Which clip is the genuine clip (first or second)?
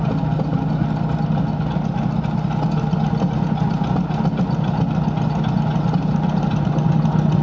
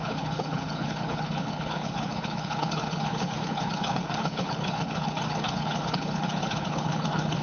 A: first